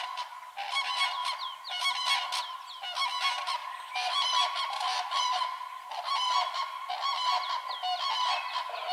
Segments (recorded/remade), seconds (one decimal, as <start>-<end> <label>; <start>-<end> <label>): 0.0-1.2 recorded; 1.2-1.8 remade; 1.8-3.6 recorded; 3.6-6.9 remade; 6.9-8.9 recorded